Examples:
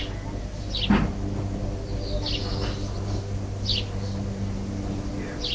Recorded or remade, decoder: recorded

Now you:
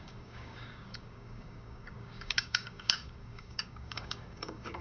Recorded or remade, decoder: remade, codec, DAC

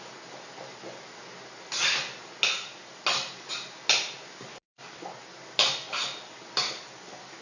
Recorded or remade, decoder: recorded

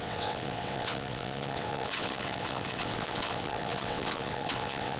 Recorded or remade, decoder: remade, vocoder, WaveNeXt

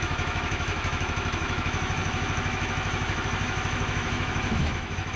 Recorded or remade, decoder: remade, autoencoder, DAC-VAE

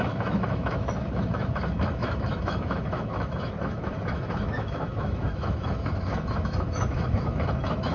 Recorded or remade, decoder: remade, autoencoder, DAC-VAE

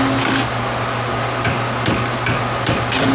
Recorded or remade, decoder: recorded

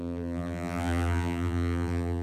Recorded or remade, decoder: remade, vocoder, BigVGAN v2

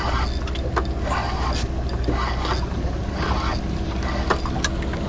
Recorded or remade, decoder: recorded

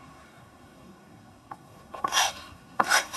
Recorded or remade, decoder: remade, codec, SNAC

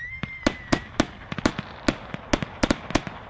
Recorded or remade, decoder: recorded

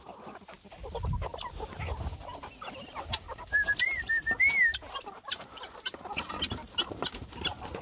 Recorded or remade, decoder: recorded